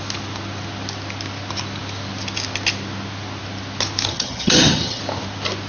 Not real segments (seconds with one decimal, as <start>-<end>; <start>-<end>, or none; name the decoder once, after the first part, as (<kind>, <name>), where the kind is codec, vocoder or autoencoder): 4.1-5.0 (vocoder, HiFi-GAN)